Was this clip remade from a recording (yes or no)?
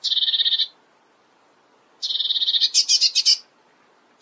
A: no